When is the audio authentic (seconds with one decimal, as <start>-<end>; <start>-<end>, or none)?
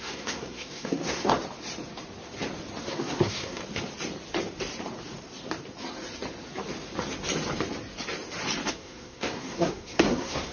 1.3-2.8; 3.6-8.7